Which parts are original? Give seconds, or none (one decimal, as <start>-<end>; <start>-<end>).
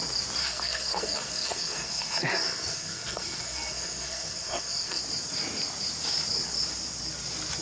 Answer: 0.0-0.4; 5.0-7.6